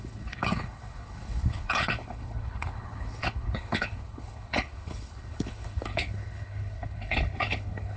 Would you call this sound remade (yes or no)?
yes